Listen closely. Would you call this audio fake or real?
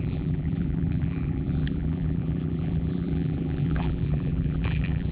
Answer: fake